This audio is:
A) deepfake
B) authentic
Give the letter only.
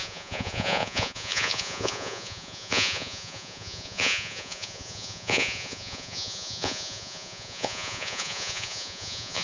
A